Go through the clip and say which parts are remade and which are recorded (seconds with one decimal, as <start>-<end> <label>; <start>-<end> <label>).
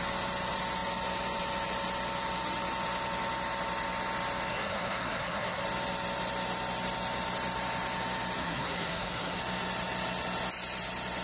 0.0-4.5 recorded; 4.5-5.6 remade; 5.6-8.4 recorded; 8.4-9.4 remade; 9.4-11.2 recorded